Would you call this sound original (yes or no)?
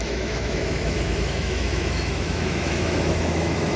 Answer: no